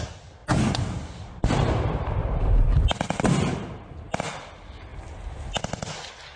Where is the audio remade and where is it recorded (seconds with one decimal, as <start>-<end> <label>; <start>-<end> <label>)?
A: 0.0-0.4 recorded; 0.4-4.2 remade; 4.2-6.4 recorded